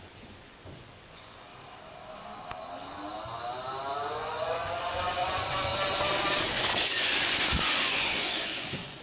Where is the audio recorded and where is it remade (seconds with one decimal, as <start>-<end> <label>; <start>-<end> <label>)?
0.0-1.5 remade; 1.5-4.1 recorded; 4.1-5.7 remade; 5.7-6.5 recorded; 6.5-9.0 remade

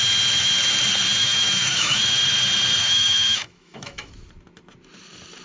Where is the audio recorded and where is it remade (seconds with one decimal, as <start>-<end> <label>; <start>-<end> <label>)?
0.0-1.2 recorded; 1.2-2.0 remade; 2.0-2.8 recorded; 2.8-4.1 remade; 4.1-5.4 recorded

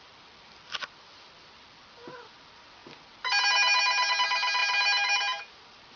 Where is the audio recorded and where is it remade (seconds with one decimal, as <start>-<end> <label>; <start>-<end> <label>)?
0.0-6.0 recorded

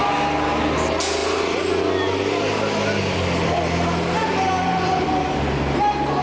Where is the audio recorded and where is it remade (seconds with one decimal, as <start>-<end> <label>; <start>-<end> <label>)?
0.0-6.2 recorded

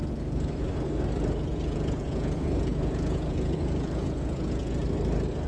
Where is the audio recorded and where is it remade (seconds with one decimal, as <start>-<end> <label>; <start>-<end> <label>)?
0.0-1.5 recorded; 1.5-4.8 remade; 4.8-5.5 recorded